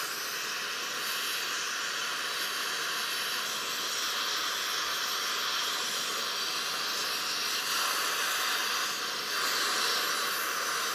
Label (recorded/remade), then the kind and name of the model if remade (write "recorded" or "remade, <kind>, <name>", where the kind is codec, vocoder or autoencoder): recorded